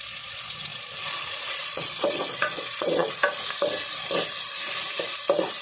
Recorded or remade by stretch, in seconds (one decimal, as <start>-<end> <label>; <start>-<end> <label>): 0.0-3.2 remade; 3.2-5.6 recorded